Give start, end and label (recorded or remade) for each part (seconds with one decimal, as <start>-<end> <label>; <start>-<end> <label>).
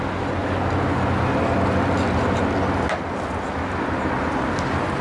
0.0-5.0 recorded